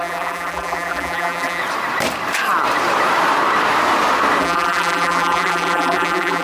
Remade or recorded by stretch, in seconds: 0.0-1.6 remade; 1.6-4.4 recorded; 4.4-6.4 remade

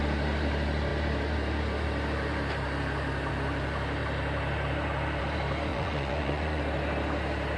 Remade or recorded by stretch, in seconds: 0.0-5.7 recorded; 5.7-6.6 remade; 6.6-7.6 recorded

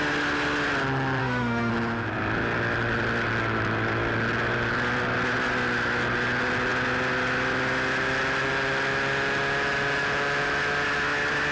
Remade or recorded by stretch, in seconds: 0.0-1.2 recorded; 1.2-1.7 remade; 1.7-11.5 recorded

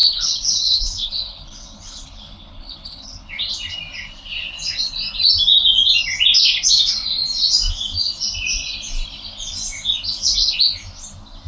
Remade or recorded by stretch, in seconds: 0.0-3.3 remade; 3.3-11.5 recorded